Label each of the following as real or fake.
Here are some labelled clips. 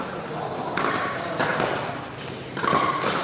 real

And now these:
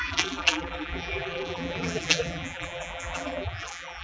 fake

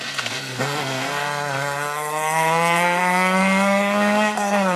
fake